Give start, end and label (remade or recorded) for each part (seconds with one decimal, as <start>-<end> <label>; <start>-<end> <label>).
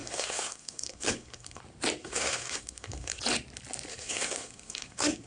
0.0-1.6 remade; 1.6-2.0 recorded; 2.0-3.2 remade; 3.2-3.9 recorded; 3.9-5.3 remade